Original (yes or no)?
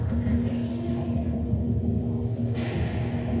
yes